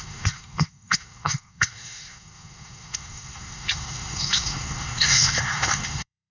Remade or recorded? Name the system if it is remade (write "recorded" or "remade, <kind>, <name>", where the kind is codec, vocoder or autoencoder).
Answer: remade, codec, SNAC